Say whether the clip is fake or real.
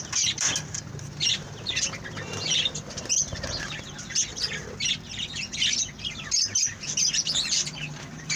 real